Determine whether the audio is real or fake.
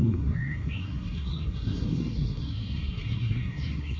fake